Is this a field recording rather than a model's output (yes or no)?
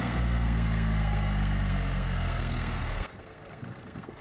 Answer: no